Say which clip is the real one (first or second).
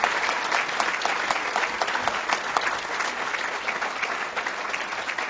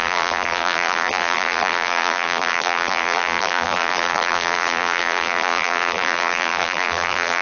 first